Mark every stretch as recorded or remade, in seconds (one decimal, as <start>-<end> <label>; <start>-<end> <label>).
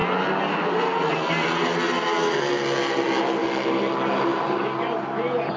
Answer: 0.0-4.3 recorded; 4.3-5.6 remade